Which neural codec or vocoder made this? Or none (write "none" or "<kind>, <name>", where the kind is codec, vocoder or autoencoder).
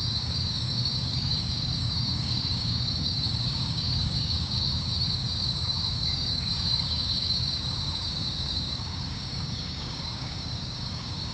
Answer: codec, DAC